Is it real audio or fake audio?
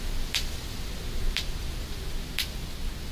real